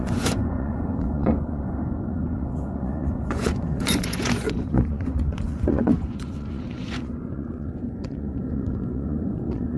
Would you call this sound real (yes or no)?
no